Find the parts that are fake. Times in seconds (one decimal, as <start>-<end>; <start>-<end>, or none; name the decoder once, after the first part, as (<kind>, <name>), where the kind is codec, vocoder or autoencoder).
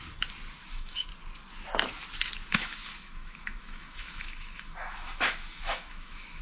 0.6-1.1 (autoencoder, DAC-VAE); 2.5-6.4